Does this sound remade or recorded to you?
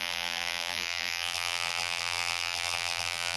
remade